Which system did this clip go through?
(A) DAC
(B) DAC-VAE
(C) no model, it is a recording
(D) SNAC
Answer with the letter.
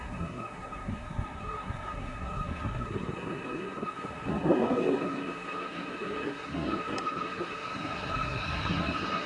D